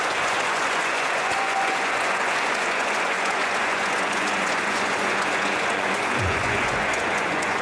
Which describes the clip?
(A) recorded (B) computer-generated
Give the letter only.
B